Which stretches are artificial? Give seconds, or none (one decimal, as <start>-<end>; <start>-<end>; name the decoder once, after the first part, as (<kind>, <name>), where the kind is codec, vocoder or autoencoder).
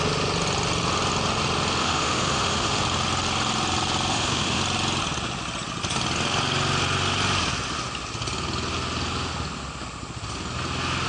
1.8-2.8 (autoencoder, DAC-VAE); 4.1-4.6